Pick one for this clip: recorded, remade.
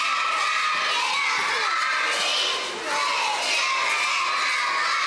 recorded